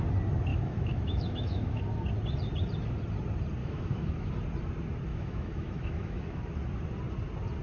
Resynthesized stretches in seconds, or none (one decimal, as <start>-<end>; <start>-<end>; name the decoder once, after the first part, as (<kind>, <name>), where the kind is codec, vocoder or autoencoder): 0.5-1.8 (autoencoder, DAC-VAE); 3.6-4.3; 5.1-6.4